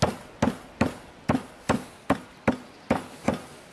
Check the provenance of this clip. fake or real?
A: real